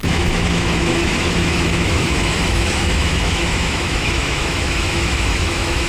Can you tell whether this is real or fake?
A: fake